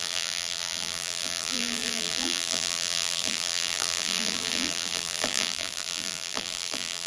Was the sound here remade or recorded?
remade